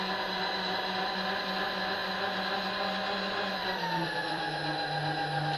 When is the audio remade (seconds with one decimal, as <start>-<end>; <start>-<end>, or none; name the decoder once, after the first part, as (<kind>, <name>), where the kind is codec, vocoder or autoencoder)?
3.6-4.4 (vocoder, BigVGAN v2)